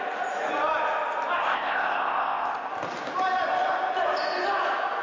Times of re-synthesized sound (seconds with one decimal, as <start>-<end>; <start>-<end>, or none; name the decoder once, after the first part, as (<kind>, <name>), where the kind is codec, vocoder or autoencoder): 1.4-2.7 (codec, ZipCodec)